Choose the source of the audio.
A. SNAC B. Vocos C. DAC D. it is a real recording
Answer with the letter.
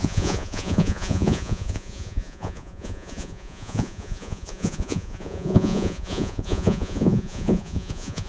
B